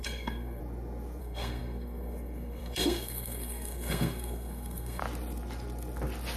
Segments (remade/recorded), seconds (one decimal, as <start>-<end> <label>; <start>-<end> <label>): 0.0-0.6 remade; 0.6-1.2 recorded; 1.2-5.0 remade; 5.0-6.4 recorded